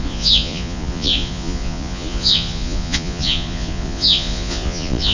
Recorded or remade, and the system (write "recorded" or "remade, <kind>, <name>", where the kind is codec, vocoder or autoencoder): remade, vocoder, Vocos